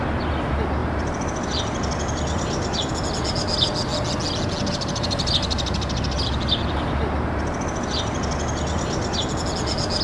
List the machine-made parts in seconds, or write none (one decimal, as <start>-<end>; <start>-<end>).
0.8-2.9